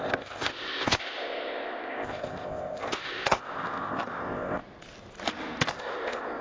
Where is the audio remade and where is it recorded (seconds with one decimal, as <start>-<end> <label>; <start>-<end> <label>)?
0.0-4.6 remade; 4.6-5.7 recorded; 5.7-6.4 remade